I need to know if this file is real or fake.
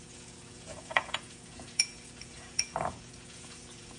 fake